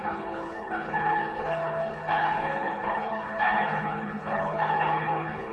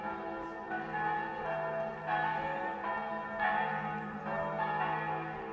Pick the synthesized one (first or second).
first